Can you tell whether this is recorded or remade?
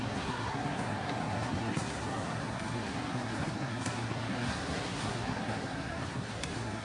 remade